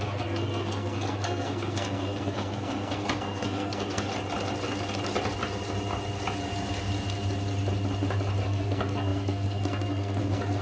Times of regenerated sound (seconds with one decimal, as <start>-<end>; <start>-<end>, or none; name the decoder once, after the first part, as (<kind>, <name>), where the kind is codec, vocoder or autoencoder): 0.0-4.1 (codec, SNAC); 8.4-10.6